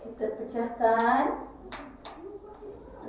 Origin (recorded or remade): remade